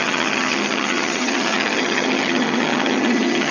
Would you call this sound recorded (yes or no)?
no